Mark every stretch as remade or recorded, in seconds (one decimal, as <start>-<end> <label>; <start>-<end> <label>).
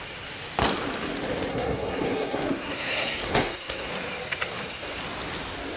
0.0-1.5 recorded; 1.5-3.9 remade; 3.9-5.8 recorded